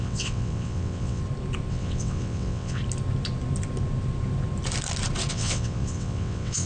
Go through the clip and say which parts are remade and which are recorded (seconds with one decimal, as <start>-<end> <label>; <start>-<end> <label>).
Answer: 0.0-1.2 remade; 1.2-1.7 recorded; 1.7-2.8 remade; 2.8-5.3 recorded; 5.3-6.7 remade